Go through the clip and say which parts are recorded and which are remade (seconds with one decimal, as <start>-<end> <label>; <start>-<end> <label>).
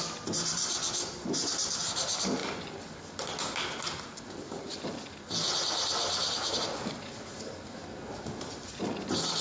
0.0-2.4 remade; 2.4-5.1 recorded; 5.1-7.8 remade; 7.8-8.4 recorded; 8.4-9.4 remade